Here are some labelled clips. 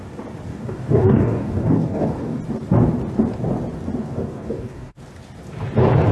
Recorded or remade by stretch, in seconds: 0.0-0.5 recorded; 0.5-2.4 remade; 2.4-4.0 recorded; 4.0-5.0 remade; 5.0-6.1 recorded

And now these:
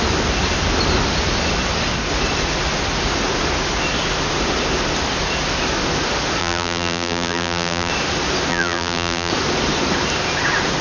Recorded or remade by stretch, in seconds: 0.0-6.4 recorded; 6.4-7.9 remade; 7.9-8.5 recorded; 8.5-9.3 remade; 9.3-10.8 recorded

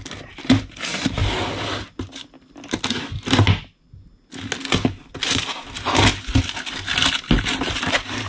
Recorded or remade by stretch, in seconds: 0.0-8.3 recorded

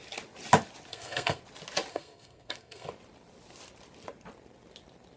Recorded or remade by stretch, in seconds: 0.0-0.9 recorded; 0.9-1.4 remade; 1.4-1.9 recorded; 1.9-2.9 remade; 2.9-5.2 recorded

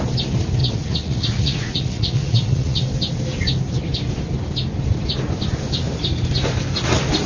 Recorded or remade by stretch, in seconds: 0.0-0.6 recorded; 0.6-2.9 remade; 2.9-7.3 recorded

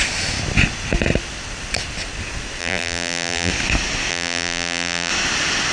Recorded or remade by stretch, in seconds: 0.0-2.6 recorded; 2.6-3.5 remade; 3.5-4.1 recorded; 4.1-5.1 remade; 5.1-5.7 recorded

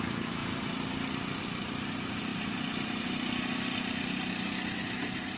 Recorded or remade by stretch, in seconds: 0.0-5.4 recorded

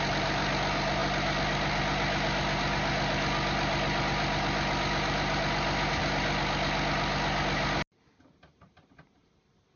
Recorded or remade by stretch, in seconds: 0.0-9.8 recorded